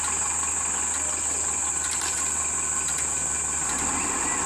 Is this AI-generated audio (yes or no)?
no